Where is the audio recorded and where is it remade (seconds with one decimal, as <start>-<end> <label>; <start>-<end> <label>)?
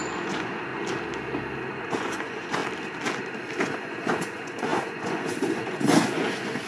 0.0-0.7 remade; 0.7-1.9 recorded; 1.9-2.6 remade; 2.6-3.6 recorded; 3.6-6.7 remade